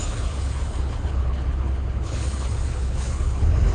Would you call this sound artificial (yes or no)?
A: yes